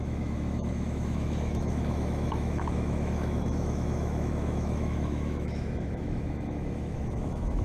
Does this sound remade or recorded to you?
remade